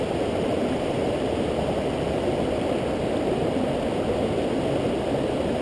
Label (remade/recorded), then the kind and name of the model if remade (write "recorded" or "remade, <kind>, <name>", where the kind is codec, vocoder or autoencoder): recorded